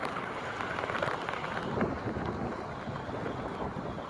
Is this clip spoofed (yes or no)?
no